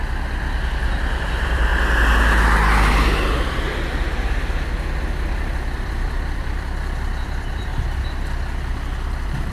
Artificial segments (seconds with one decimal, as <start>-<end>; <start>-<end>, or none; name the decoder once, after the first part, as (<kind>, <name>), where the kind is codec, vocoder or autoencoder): 0.0-1.7 (vocoder, BigVGAN v2); 2.9-7.7; 8.7-9.5